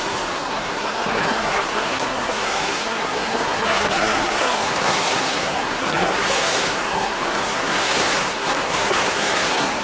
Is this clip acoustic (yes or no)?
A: no